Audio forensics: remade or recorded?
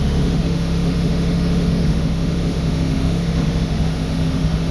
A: remade